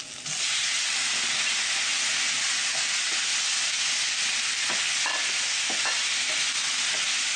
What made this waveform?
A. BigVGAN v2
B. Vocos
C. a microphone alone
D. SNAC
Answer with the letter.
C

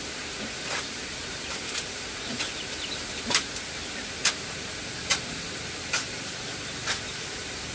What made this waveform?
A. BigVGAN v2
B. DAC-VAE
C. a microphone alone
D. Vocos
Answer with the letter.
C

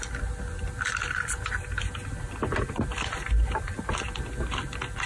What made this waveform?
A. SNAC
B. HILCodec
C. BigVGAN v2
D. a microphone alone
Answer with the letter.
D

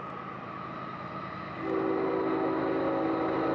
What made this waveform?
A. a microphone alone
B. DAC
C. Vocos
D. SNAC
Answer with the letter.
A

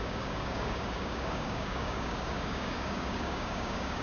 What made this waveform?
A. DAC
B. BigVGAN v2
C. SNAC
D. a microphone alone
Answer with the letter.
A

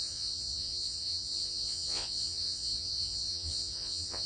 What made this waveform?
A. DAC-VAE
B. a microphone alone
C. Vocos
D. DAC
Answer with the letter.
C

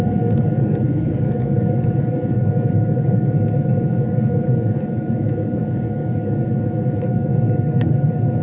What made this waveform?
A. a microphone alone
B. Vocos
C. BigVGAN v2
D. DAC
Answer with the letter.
D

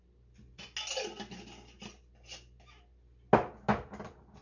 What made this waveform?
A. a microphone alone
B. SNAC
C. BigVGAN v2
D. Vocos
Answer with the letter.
A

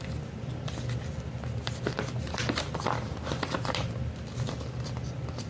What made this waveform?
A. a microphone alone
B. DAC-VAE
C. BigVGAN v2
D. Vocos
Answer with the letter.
C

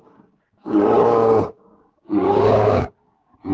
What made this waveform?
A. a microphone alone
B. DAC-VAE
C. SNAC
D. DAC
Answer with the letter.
D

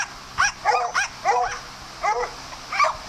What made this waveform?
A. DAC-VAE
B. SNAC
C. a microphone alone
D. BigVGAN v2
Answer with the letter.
C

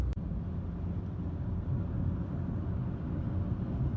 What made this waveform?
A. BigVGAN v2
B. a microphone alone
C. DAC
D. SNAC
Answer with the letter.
B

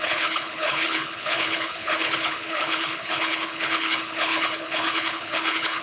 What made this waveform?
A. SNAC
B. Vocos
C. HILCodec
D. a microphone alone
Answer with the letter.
C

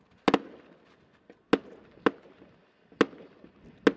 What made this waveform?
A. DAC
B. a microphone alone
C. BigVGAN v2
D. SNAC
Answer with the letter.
B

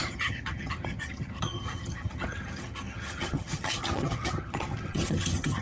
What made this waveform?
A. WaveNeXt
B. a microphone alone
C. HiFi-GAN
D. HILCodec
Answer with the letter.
C